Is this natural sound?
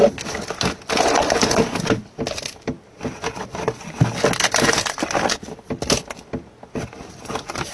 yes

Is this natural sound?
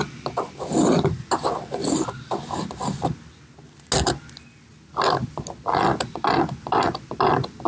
yes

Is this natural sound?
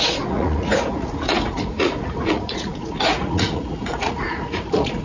no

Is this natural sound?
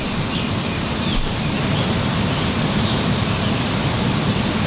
yes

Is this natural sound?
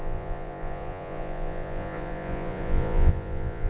no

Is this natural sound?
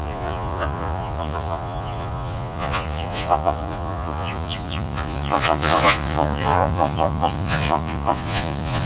no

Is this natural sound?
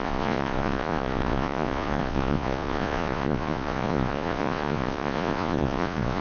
no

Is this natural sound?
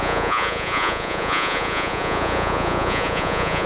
no